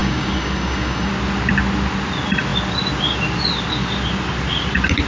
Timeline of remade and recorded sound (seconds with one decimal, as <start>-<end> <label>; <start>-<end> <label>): 0.0-1.1 remade; 1.1-5.1 recorded